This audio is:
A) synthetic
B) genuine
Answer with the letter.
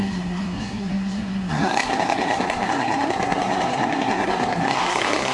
A